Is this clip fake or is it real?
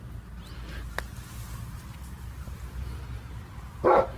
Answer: real